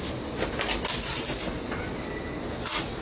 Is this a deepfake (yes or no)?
no